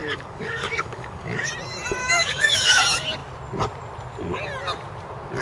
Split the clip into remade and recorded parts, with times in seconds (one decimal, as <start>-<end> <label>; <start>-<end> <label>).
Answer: 0.0-1.5 remade; 1.5-2.0 recorded; 2.0-2.8 remade; 2.8-5.4 recorded